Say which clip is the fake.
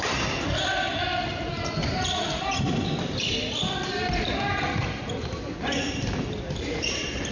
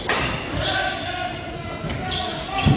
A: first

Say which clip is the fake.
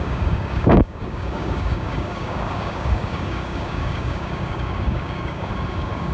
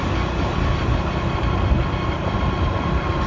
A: first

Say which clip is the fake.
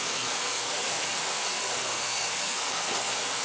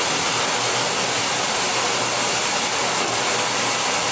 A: first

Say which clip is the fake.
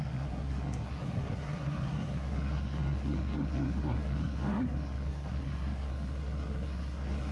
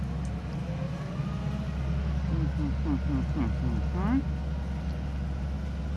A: first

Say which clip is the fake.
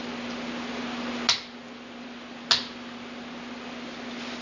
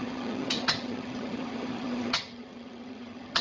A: second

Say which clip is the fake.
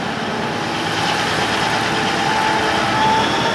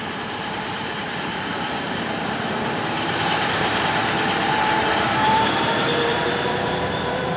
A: second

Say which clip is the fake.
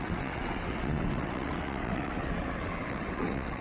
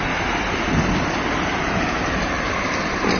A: first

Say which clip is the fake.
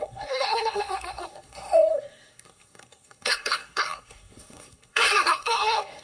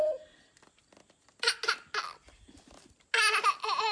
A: first